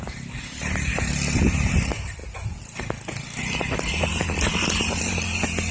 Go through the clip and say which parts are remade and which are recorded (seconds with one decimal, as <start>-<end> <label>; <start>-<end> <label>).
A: 0.0-5.7 recorded